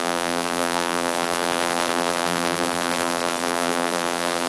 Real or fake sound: fake